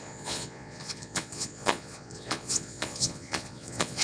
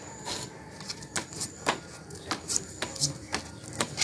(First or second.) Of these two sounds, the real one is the second